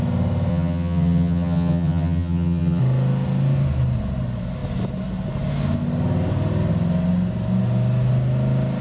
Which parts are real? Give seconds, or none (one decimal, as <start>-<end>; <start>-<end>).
0.0-0.5; 2.8-8.8